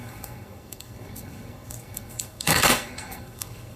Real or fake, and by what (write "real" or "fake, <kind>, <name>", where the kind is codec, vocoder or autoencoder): fake, codec, SNAC